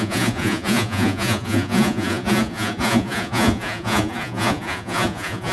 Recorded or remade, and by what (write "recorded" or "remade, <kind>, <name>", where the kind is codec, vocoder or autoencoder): remade, vocoder, Vocos